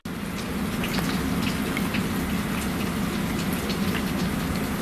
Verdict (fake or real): real